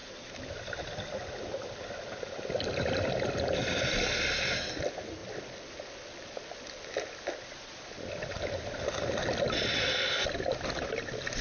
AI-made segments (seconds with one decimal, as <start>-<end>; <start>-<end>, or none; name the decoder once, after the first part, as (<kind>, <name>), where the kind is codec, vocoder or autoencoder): none